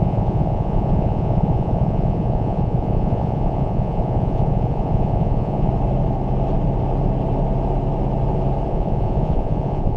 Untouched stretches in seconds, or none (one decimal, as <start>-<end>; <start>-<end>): 5.7-8.7